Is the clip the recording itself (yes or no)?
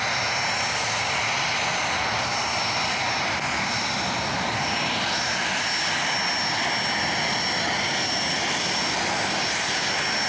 yes